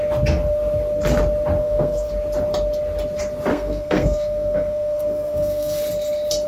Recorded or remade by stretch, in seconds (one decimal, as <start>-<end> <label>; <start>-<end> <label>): 0.0-1.6 recorded; 1.6-2.1 remade; 2.1-3.5 recorded; 3.5-5.8 remade; 5.8-6.5 recorded